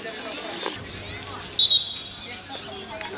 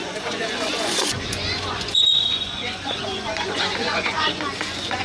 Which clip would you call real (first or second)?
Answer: first